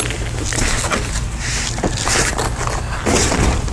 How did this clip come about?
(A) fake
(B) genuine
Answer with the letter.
B